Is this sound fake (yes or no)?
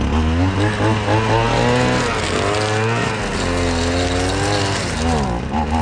no